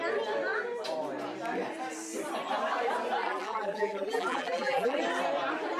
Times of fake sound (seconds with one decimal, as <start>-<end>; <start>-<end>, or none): 3.2-5.0